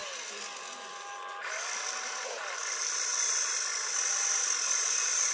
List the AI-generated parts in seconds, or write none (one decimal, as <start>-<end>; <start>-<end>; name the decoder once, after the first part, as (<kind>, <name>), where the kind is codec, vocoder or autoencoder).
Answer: none